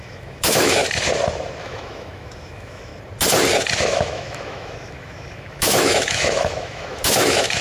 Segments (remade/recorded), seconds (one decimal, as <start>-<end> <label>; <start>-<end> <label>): 0.0-0.8 remade; 0.8-1.6 recorded; 1.6-2.9 remade; 2.9-3.8 recorded; 3.8-7.6 remade